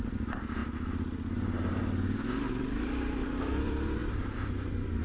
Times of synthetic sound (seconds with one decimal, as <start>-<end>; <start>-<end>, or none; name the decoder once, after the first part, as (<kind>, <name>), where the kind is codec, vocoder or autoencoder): 0.0-0.6 (vocoder, BigVGAN v2); 2.5-5.0